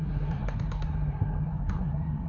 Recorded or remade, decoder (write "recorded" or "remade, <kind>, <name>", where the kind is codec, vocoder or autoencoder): remade, codec, SNAC